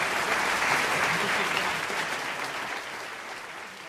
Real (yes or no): yes